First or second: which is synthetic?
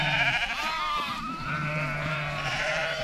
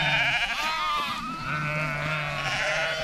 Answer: first